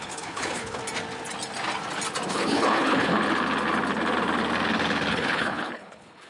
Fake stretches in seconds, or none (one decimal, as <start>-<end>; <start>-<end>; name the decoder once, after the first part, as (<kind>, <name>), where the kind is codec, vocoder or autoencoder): 0.0-0.8 (codec, HILCodec); 2.3-3.2; 5.1-6.3